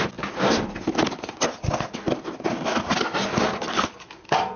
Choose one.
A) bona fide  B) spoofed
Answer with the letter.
A